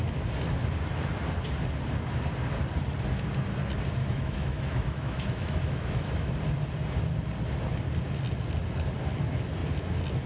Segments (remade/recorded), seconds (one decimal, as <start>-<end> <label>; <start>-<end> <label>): 0.0-4.0 recorded; 4.0-6.3 remade; 6.3-10.3 recorded